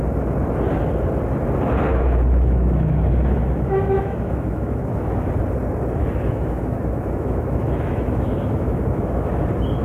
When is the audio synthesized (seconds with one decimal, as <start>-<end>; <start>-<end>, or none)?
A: 1.9-5.3; 6.0-9.3